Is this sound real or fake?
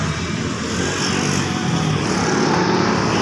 real